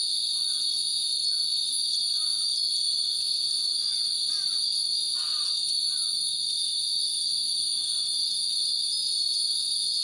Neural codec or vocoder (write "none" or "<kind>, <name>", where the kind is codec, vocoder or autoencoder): none